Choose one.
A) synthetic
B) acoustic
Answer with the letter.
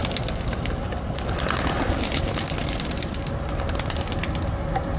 A